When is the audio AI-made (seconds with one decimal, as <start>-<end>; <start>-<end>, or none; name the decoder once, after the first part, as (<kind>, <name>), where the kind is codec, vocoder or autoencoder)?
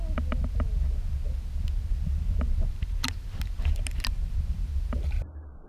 none